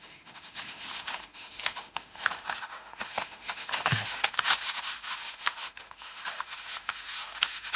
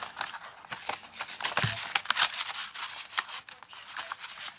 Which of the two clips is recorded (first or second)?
second